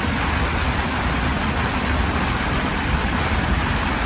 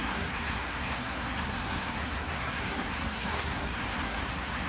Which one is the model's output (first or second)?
second